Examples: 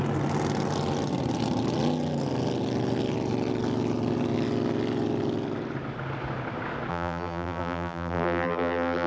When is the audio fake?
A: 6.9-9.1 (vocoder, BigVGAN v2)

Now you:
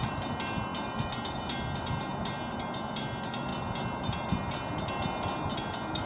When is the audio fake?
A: none

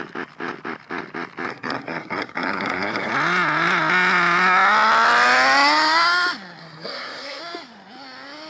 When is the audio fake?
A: 1.5-3.1 (codec, SNAC); 6.6-7.4

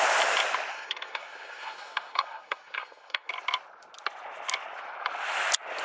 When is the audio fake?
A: 0.7-3.3 (codec, SNAC)

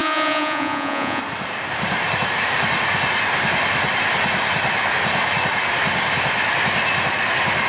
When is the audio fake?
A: 0.0-1.2 (vocoder, Vocos)

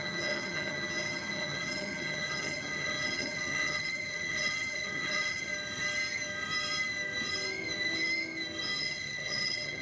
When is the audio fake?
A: 0.0-5.5 (vocoder, HiFi-GAN); 8.8-9.8

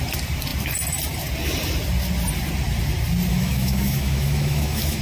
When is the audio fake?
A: 3.3-5.0 (autoencoder, DAC-VAE)

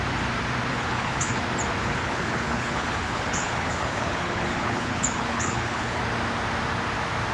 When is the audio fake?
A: 0.7-1.4 (codec, HILCodec); 1.8-6.0